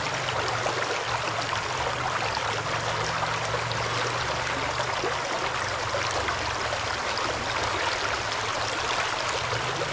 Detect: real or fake real